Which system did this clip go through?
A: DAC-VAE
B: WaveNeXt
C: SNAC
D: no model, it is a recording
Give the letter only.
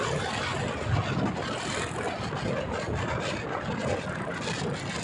D